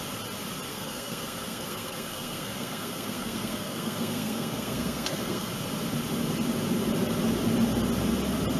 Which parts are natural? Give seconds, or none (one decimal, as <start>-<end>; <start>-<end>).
0.0-0.7; 5.5-8.6